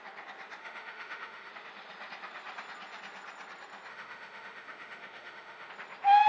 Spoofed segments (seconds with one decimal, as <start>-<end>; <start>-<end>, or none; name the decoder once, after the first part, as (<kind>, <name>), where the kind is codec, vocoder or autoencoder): 0.6-1.5 (autoencoder, DAC-VAE); 3.9-5.7